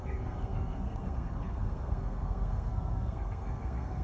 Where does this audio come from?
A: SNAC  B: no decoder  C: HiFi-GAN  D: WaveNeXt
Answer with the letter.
A